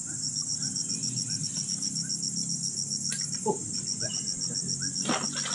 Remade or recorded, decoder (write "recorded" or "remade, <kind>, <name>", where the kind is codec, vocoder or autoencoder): recorded